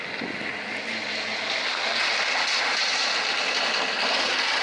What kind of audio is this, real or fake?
real